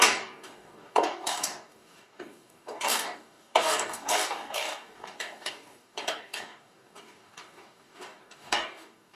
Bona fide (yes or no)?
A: no